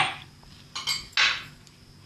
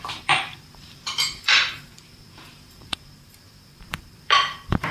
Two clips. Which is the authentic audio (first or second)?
first